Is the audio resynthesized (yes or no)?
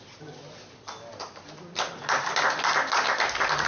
no